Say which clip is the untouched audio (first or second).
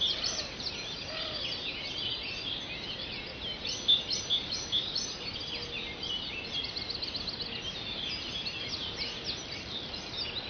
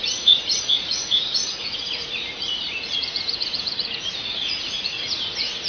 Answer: first